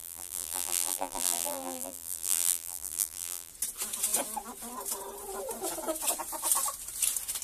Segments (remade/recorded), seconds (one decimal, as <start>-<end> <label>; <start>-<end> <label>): 0.0-3.5 remade; 3.5-7.4 recorded